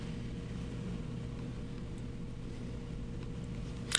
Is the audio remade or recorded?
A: recorded